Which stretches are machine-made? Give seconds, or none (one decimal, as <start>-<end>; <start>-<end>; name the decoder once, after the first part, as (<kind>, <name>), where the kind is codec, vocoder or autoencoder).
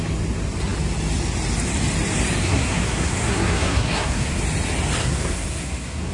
2.4-4.4 (codec, SNAC); 5.0-6.1